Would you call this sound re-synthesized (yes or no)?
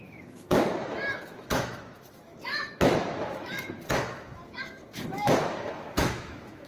yes